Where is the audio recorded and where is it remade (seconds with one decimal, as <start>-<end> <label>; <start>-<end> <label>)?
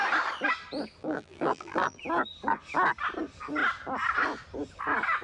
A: 0.0-1.0 recorded; 1.0-2.0 remade; 2.0-5.2 recorded